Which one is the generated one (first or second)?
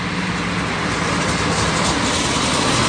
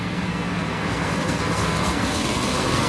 second